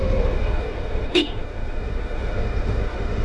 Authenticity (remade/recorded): remade